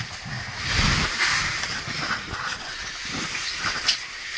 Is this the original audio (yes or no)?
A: yes